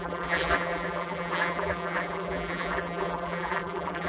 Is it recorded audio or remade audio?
remade